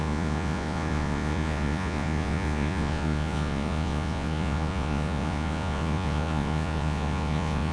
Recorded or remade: remade